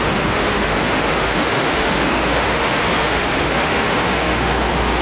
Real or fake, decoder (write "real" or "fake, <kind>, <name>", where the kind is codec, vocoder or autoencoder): fake, autoencoder, DAC-VAE